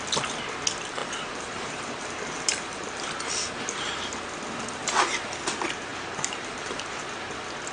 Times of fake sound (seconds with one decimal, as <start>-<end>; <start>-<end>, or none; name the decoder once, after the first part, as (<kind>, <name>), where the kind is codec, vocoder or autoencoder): 1.0-3.0 (vocoder, BigVGAN v2); 5.9-7.0